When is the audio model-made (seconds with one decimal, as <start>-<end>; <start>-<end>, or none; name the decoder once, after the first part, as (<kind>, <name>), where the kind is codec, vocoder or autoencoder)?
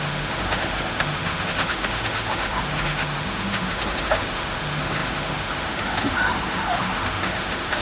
0.0-7.8 (autoencoder, DAC-VAE)